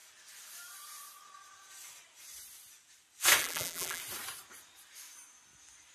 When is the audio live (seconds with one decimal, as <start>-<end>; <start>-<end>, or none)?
0.0-3.4; 4.0-5.9